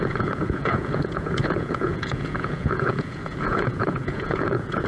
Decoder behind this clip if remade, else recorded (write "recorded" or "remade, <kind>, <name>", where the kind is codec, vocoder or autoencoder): remade, vocoder, Vocos